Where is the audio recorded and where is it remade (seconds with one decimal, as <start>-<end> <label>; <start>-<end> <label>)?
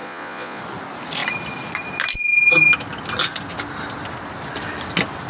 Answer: 0.0-0.6 remade; 0.6-5.3 recorded